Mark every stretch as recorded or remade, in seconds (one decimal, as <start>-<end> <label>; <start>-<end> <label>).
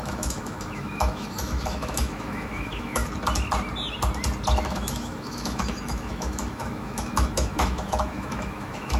0.0-3.0 remade; 3.0-4.6 recorded; 4.6-9.0 remade